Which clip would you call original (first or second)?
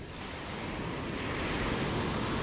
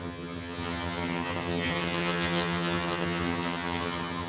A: first